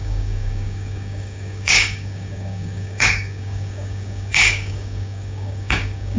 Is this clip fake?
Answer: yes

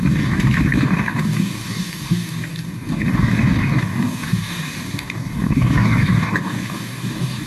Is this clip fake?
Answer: yes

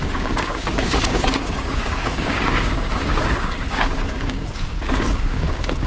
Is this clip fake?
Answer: yes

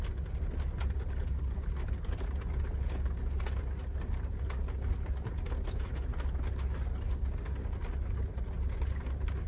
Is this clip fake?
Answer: no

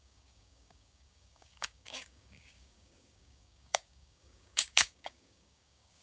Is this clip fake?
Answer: yes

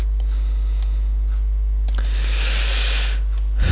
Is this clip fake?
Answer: no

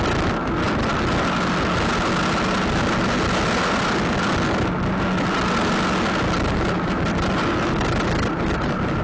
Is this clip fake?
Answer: no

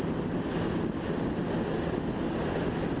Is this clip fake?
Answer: no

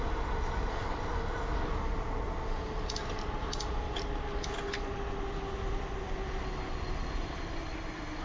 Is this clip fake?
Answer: no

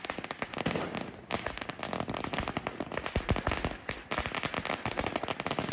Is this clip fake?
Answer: no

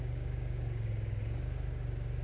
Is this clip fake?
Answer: yes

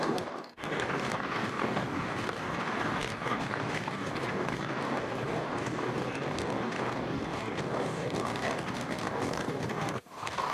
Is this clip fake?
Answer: yes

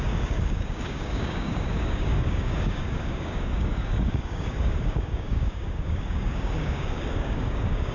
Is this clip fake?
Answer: yes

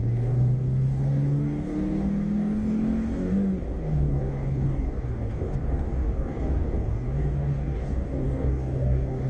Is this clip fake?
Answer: yes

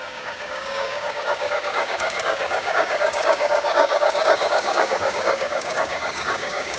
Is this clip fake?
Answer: yes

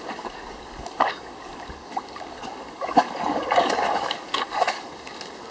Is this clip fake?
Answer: yes